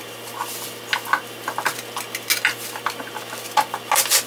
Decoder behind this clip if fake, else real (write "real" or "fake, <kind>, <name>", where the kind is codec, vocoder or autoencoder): real